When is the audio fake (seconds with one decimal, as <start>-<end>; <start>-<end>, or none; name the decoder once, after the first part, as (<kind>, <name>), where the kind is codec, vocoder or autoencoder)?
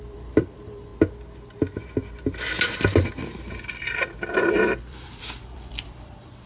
0.0-0.9 (vocoder, BigVGAN v2); 4.8-6.5